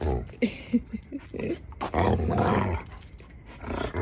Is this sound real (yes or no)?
yes